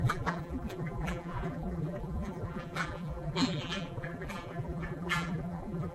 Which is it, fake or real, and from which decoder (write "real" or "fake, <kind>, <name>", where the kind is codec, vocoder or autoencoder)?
fake, vocoder, BigVGAN v2